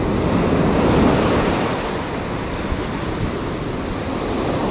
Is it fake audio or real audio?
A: real